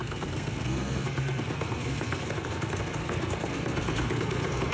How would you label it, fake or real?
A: fake